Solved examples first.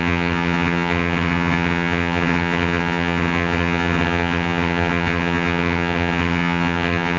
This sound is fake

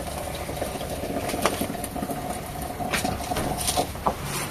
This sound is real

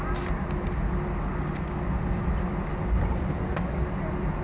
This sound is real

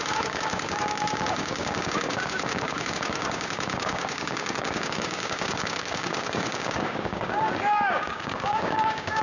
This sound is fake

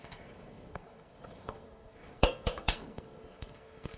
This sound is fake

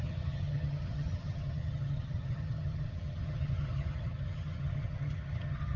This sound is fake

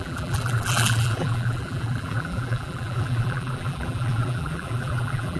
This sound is fake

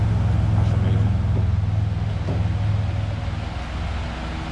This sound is real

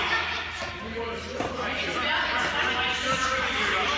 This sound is real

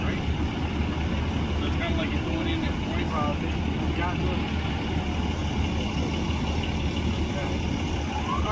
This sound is real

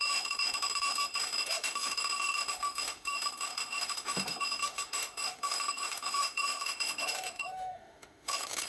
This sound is fake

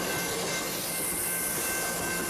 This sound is real